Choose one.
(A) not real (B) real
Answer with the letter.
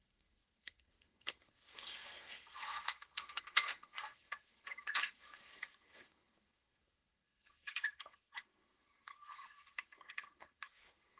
A